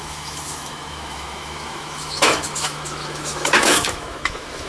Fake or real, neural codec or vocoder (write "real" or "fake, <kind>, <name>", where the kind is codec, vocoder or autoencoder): fake, autoencoder, DAC-VAE